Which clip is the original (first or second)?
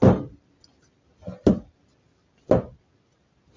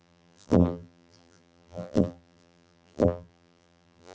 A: first